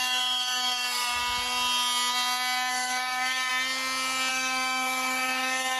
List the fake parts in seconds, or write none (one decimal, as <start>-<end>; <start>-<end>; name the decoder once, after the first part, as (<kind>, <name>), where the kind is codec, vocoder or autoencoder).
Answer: 0.0-1.2 (codec, DAC); 2.7-3.5; 4.3-5.8